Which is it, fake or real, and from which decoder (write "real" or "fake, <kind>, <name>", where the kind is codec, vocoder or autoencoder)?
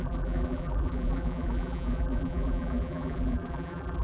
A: fake, vocoder, BigVGAN v2